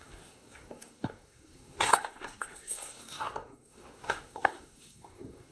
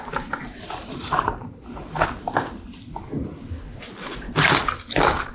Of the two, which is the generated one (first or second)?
first